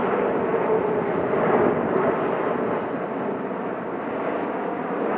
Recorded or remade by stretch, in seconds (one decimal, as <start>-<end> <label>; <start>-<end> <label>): 0.0-5.2 recorded